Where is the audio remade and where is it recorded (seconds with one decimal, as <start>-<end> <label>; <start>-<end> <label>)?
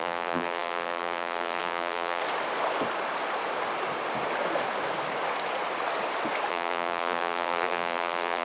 0.0-2.2 remade; 2.2-6.5 recorded; 6.5-8.4 remade